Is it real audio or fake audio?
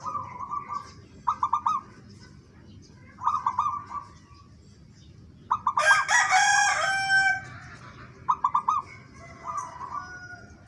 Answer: real